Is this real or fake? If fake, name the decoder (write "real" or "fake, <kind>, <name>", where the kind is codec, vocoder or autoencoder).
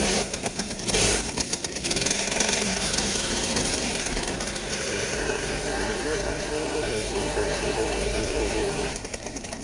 fake, codec, SNAC